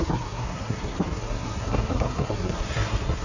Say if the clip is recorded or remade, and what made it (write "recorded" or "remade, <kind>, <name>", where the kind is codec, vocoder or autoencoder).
remade, codec, SNAC